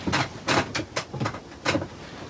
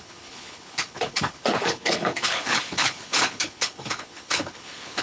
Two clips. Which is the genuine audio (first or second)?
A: first